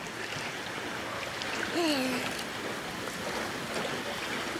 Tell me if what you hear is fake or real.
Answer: real